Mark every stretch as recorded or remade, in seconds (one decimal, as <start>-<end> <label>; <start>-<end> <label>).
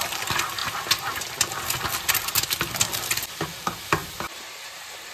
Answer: 0.0-4.0 recorded; 4.0-5.1 remade